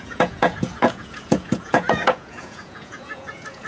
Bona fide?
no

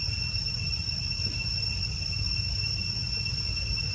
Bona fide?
yes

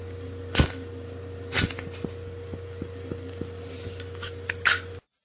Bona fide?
yes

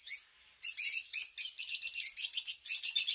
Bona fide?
yes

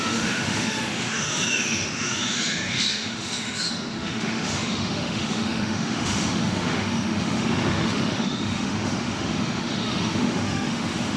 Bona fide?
no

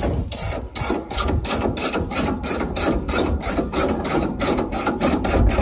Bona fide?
yes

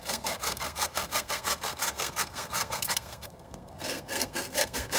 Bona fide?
no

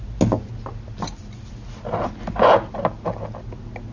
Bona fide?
yes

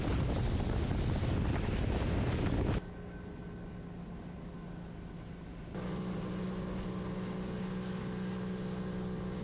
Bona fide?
yes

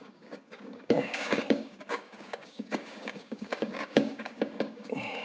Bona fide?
no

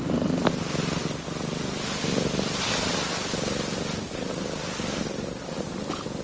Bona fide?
yes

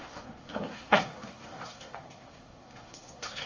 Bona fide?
no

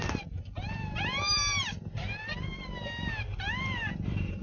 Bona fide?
yes